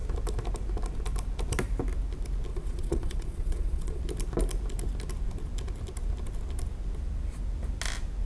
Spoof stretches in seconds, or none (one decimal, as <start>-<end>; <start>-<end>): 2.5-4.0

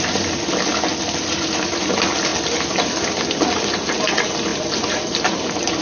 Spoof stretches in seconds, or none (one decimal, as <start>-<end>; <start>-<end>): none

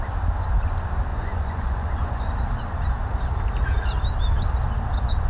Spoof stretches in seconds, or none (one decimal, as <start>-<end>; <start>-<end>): 1.1-2.3

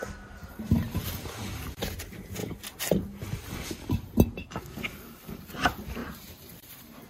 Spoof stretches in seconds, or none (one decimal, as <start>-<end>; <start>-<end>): 4.4-5.4

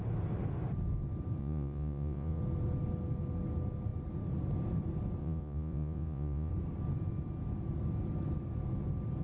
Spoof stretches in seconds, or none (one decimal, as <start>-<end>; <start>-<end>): 1.4-2.4; 5.2-6.5